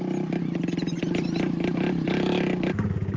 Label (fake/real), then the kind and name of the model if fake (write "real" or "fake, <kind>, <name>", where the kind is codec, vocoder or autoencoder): real